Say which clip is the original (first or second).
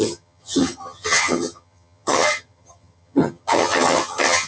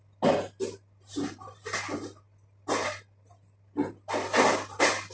second